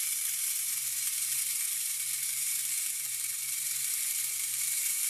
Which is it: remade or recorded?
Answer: remade